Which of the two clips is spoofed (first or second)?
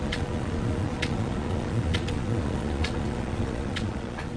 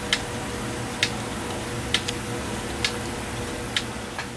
first